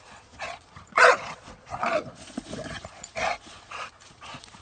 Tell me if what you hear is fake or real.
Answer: fake